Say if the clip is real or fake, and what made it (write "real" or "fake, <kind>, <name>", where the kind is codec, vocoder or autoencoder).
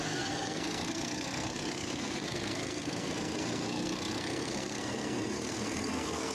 fake, codec, SNAC